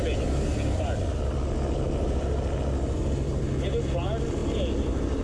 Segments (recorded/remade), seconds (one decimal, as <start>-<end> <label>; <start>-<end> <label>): 0.0-5.2 recorded